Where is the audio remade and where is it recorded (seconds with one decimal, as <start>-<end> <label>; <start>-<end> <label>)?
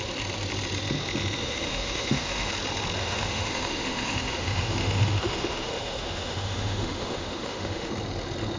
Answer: 0.0-1.4 recorded; 1.4-2.5 remade; 2.5-3.0 recorded; 3.0-7.9 remade; 7.9-8.6 recorded